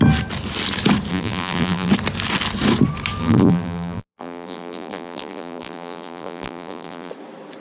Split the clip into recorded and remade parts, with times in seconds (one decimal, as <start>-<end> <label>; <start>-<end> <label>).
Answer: 0.0-1.1 recorded; 1.1-1.9 remade; 1.9-3.2 recorded; 3.2-7.1 remade; 7.1-7.6 recorded